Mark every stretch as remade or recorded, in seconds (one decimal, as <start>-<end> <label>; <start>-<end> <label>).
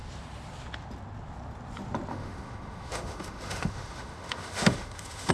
0.0-2.1 recorded; 2.1-5.3 remade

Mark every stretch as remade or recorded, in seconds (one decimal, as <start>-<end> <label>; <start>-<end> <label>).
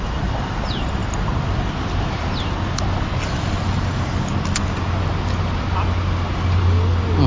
0.0-7.3 recorded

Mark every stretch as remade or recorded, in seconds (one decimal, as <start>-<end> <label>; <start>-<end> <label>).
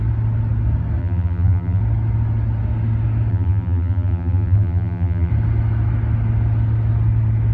0.0-1.0 recorded; 1.0-1.8 remade; 1.8-3.3 recorded; 3.3-5.3 remade; 5.3-7.5 recorded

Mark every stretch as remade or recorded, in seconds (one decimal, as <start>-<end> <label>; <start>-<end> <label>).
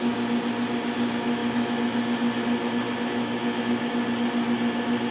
0.0-5.1 recorded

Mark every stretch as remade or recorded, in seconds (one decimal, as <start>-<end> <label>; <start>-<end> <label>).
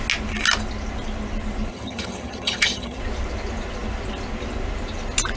0.0-1.7 recorded; 1.7-3.0 remade; 3.0-5.4 recorded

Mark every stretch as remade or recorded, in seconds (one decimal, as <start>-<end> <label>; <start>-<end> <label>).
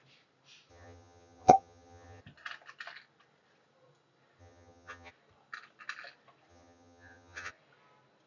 0.0-0.7 recorded; 0.7-2.2 remade; 2.2-4.4 recorded; 4.4-5.1 remade; 5.1-6.5 recorded; 6.5-7.5 remade; 7.5-8.3 recorded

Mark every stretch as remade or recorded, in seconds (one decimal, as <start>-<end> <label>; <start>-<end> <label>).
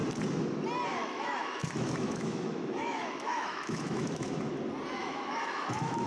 0.0-0.9 recorded; 0.9-4.3 remade; 4.3-5.0 recorded; 5.0-6.1 remade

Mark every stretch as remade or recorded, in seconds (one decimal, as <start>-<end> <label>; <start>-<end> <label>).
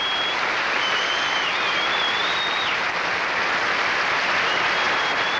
0.0-0.5 recorded; 0.5-1.6 remade; 1.6-5.4 recorded